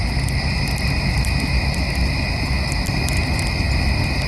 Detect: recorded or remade recorded